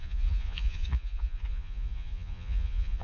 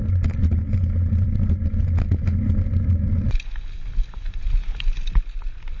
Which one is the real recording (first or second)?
second